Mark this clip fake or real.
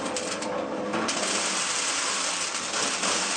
real